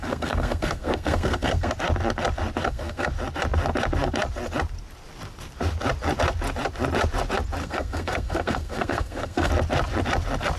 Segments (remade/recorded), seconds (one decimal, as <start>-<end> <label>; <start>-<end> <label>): 0.0-1.7 remade; 1.7-2.6 recorded; 2.6-3.1 remade; 3.1-7.6 recorded; 7.6-9.5 remade; 9.5-10.6 recorded